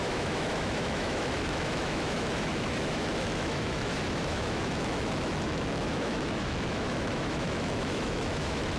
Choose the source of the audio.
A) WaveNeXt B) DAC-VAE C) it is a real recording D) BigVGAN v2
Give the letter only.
B